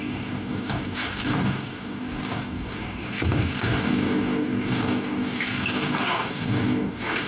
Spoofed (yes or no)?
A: yes